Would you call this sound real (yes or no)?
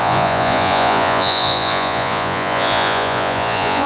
no